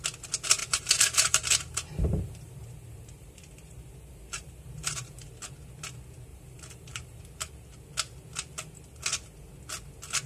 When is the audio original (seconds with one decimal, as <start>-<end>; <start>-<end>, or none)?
0.0-0.6; 5.3-6.3; 7.2-10.3